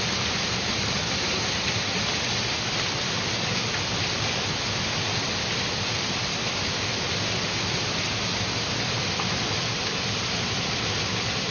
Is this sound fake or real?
real